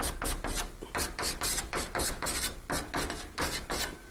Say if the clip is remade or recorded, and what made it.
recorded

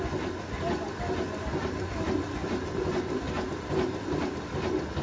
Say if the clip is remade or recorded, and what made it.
recorded